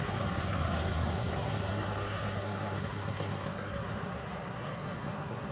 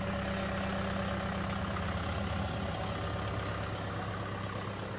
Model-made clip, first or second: first